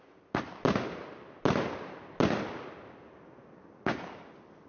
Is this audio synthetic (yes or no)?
no